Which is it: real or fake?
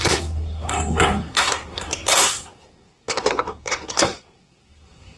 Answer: fake